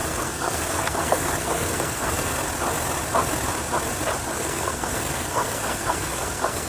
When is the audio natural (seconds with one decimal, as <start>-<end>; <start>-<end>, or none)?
2.3-4.3